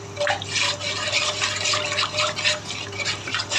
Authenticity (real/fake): real